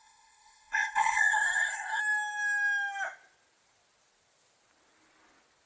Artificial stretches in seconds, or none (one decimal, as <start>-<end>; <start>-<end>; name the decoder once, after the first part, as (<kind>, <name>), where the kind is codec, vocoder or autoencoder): 0.0-2.0 (codec, SNAC)